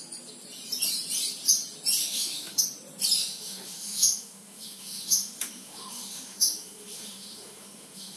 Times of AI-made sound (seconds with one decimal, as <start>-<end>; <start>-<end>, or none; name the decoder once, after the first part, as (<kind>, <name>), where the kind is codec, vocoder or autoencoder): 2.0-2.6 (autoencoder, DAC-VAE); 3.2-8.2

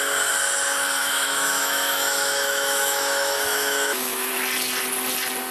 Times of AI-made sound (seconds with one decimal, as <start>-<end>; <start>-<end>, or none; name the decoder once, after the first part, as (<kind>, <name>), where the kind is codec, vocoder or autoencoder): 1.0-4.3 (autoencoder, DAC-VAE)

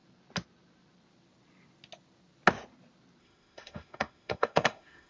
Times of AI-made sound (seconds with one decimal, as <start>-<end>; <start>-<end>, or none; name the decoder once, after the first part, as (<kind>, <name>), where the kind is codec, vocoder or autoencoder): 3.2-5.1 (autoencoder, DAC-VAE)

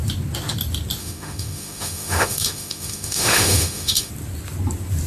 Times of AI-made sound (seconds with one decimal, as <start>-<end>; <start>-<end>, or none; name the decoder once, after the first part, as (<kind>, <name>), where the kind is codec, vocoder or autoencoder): 1.0-4.1 (autoencoder, DAC-VAE)

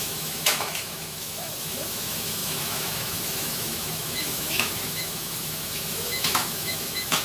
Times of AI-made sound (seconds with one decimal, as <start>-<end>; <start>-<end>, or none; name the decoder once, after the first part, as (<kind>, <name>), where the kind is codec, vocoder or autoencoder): 0.0-7.2 (autoencoder, DAC-VAE)

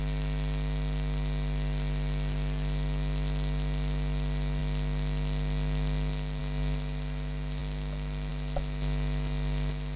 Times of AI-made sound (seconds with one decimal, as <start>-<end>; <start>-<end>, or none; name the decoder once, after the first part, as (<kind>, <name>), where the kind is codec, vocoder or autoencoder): none

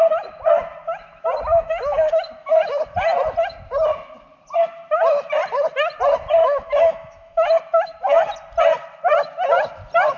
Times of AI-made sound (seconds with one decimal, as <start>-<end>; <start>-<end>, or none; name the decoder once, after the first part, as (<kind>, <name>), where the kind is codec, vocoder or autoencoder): 1.5-2.8 (autoencoder, DAC-VAE); 6.4-7.6

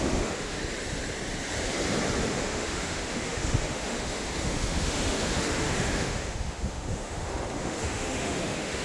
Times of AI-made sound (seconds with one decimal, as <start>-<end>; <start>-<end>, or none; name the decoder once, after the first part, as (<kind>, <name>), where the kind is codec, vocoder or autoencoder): 0.0-0.6 (autoencoder, DAC-VAE); 2.3-8.8